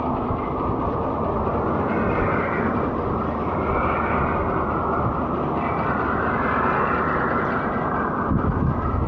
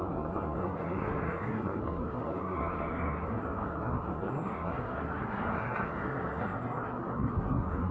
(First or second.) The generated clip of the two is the second